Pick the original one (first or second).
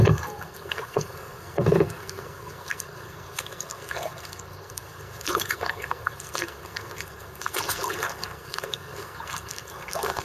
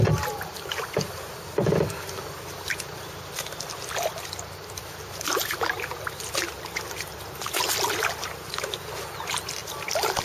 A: second